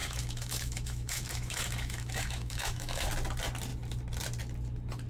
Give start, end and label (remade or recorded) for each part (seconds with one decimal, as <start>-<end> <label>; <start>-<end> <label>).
0.0-3.1 remade; 3.1-5.1 recorded